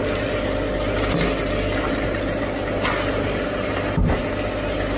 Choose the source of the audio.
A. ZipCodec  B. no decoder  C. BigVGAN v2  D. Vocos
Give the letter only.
B